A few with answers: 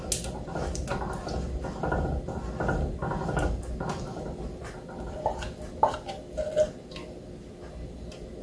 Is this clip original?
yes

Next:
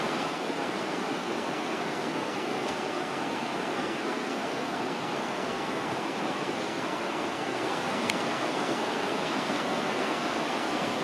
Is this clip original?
no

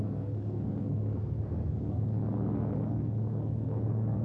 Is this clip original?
no